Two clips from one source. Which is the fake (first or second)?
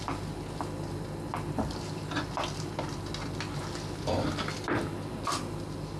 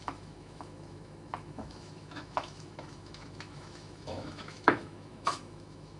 second